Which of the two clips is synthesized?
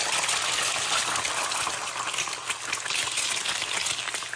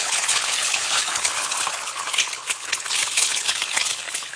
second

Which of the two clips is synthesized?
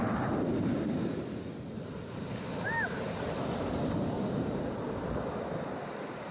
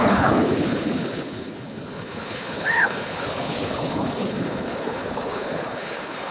second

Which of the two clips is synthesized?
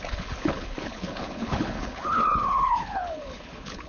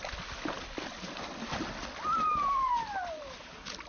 first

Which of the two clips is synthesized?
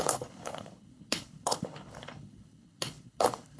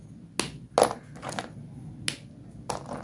first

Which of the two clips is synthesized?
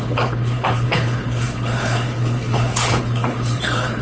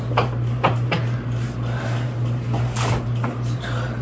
first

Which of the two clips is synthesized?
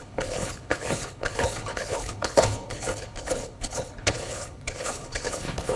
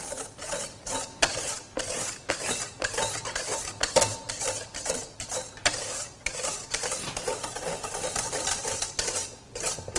first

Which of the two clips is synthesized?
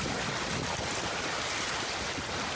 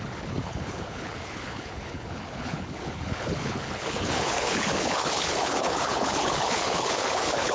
second